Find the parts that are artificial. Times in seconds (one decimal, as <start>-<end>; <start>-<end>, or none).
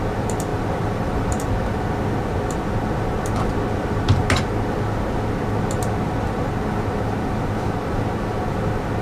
0.5-1.4